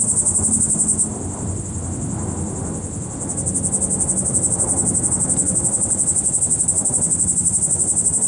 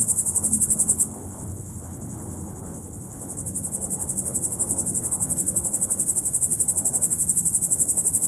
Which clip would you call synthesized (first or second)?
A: second